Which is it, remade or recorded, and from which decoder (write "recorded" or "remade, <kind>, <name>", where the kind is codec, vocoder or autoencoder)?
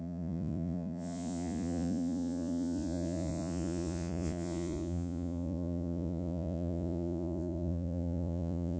remade, vocoder, Vocos